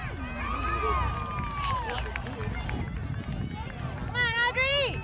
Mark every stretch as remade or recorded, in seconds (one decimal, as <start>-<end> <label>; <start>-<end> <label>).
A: 0.0-5.0 recorded